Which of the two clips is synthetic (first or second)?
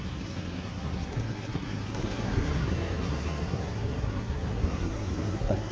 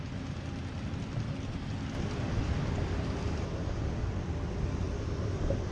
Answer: first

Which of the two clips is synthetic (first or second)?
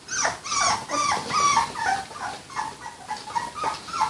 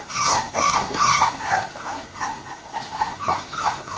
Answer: second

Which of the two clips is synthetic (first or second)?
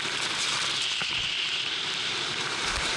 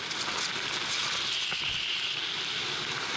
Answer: first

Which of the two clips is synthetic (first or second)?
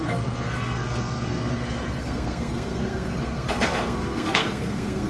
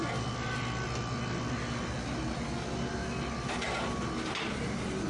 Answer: first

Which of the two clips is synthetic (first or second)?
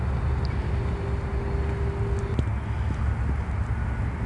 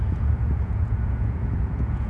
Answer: second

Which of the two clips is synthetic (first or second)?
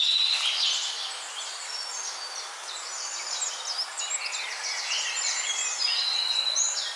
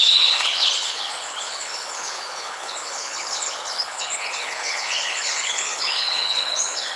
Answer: second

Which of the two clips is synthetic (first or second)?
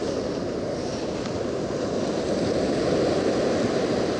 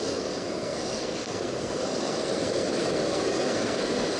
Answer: second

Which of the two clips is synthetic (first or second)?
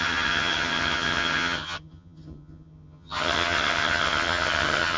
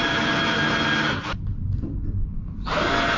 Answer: first